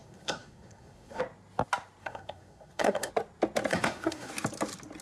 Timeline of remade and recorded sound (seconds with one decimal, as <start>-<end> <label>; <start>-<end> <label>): 0.0-1.2 remade; 1.2-2.0 recorded; 2.0-3.1 remade; 3.1-3.7 recorded; 3.7-4.3 remade; 4.3-5.0 recorded